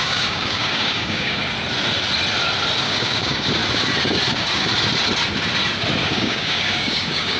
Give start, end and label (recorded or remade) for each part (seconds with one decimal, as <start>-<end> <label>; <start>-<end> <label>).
0.0-1.4 remade; 1.4-2.8 recorded; 2.8-3.6 remade; 3.6-4.3 recorded; 4.3-4.7 remade; 4.7-6.1 recorded; 6.1-7.4 remade